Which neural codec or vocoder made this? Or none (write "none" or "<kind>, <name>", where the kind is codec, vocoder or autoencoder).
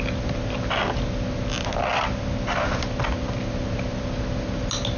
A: none